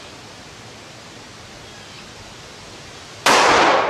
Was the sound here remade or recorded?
recorded